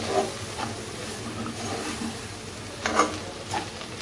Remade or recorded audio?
recorded